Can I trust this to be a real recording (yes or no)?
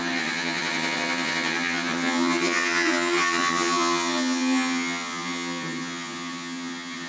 no